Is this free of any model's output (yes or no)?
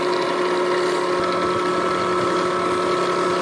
yes